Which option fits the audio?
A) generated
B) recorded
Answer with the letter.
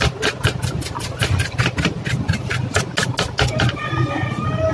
B